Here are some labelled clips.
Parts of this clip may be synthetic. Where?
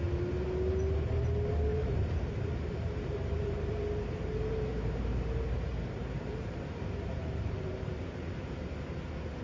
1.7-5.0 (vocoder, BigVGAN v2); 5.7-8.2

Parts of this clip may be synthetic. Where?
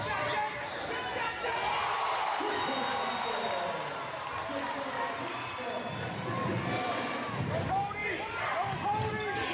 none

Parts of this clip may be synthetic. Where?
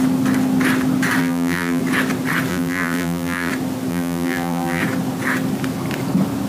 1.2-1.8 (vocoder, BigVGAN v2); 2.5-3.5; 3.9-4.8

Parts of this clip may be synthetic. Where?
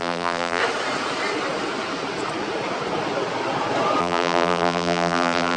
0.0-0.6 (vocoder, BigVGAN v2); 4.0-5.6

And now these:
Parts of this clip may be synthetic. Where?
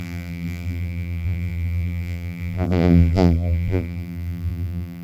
0.0-5.0 (vocoder, BigVGAN v2)